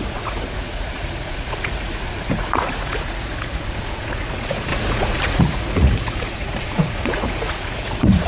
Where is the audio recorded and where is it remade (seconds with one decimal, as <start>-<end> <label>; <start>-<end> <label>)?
0.0-8.3 remade